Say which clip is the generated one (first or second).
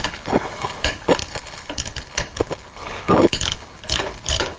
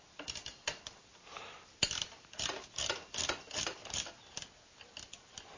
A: first